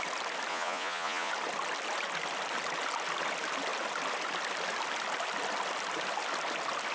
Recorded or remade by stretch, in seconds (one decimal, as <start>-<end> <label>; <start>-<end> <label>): 0.0-0.5 recorded; 0.5-1.3 remade; 1.3-6.9 recorded